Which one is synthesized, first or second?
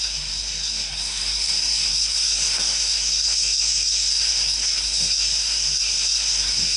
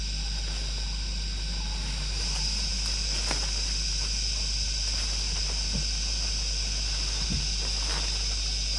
first